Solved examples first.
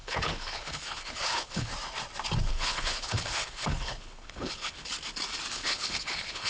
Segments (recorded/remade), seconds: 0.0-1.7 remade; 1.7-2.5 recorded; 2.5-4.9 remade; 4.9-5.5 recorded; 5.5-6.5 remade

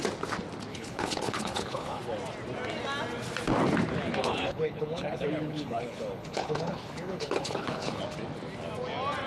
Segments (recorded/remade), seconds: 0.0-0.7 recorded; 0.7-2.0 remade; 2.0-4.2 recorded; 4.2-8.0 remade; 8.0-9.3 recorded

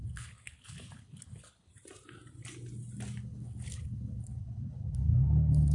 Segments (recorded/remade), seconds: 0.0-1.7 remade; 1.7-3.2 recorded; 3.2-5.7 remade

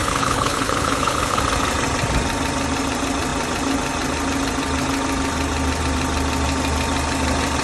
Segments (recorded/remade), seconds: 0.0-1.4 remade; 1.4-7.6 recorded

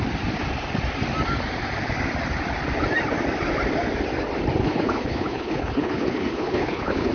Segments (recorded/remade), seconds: 0.0-4.6 recorded; 4.6-7.1 remade

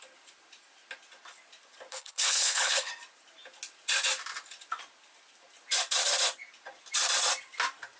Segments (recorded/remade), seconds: 0.0-1.9 recorded; 1.9-2.9 remade; 2.9-8.0 recorded

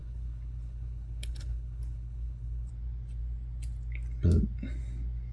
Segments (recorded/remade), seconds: 0.0-2.7 remade; 2.7-5.3 recorded